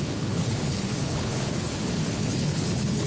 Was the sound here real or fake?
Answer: fake